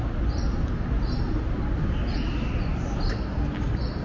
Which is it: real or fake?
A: real